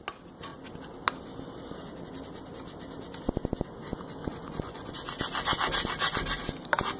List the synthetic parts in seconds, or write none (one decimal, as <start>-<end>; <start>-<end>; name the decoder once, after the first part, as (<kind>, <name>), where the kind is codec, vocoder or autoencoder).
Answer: 4.2-4.9 (vocoder, Vocos)